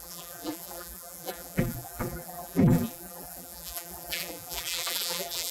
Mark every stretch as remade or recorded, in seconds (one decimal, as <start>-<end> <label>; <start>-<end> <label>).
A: 0.0-5.5 remade